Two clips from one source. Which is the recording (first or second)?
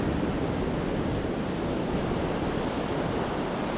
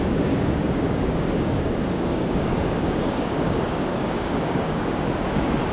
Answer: first